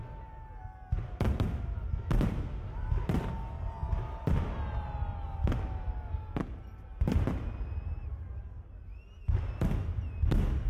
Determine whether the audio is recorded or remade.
recorded